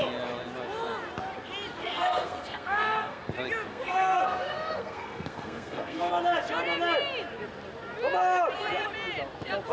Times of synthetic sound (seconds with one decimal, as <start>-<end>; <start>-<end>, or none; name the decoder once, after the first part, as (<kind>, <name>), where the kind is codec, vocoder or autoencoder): 1.8-3.2 (codec, SNAC); 3.7-6.1